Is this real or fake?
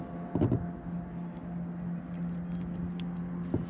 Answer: real